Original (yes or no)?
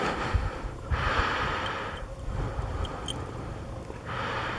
yes